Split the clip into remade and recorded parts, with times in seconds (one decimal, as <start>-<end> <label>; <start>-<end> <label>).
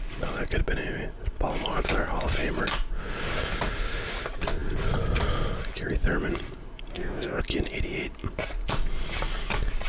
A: 0.0-6.9 recorded; 6.9-7.4 remade; 7.4-9.9 recorded